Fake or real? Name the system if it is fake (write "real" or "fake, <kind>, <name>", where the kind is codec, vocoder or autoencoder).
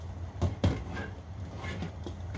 real